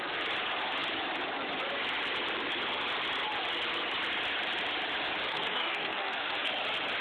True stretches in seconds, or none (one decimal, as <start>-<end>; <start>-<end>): 0.0-5.3; 6.5-7.0